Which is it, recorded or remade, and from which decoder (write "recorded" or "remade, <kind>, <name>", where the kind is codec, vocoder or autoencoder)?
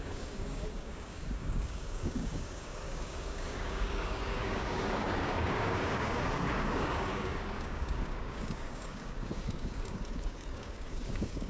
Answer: remade, codec, DAC